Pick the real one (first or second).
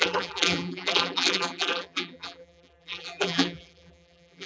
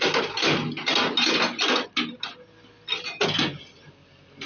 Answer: second